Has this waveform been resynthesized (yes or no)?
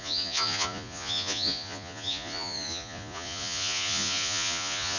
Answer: yes